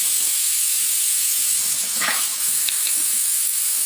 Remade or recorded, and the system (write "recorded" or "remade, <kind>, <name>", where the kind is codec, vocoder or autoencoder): remade, autoencoder, DAC-VAE